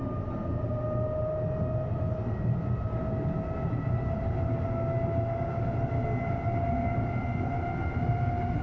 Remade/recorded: recorded